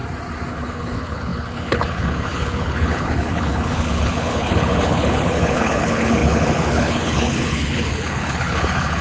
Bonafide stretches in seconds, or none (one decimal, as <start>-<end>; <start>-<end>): 0.0-0.5